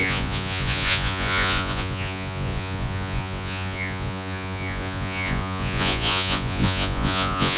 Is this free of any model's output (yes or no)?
no